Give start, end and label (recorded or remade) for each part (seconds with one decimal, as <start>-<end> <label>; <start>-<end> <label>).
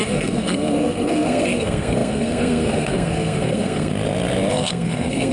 0.0-3.9 remade; 3.9-4.5 recorded; 4.5-5.3 remade